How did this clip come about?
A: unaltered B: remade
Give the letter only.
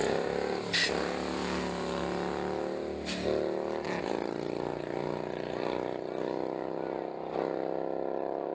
A